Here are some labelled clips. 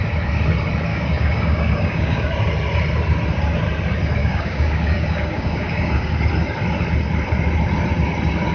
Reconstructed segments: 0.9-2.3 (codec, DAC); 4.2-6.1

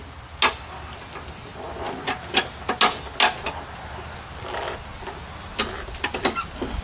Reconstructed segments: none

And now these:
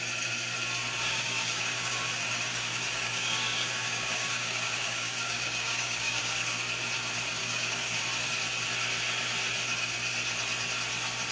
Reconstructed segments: 1.0-1.9 (codec, DAC); 2.5-6.6; 7.4-8.0